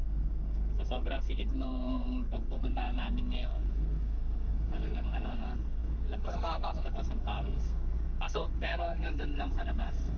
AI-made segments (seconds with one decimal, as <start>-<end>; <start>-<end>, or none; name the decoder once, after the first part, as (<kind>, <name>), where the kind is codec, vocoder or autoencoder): 0.0-10.2 (codec, SNAC)